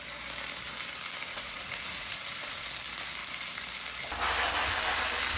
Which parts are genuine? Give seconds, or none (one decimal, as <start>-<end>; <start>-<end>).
0.0-1.3; 2.7-5.4